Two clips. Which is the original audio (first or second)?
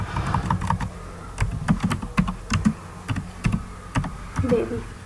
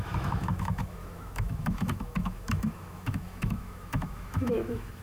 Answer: first